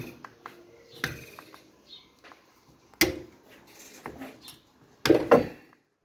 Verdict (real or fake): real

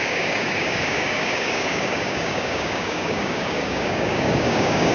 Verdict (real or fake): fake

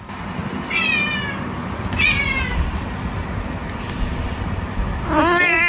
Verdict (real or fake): real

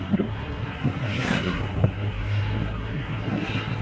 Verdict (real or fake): fake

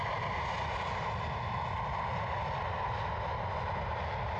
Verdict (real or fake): real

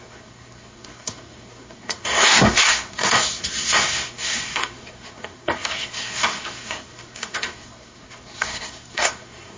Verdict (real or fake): fake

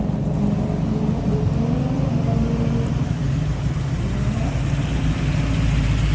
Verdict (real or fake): real